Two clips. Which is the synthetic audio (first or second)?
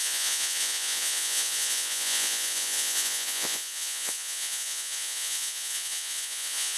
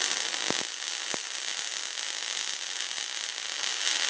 first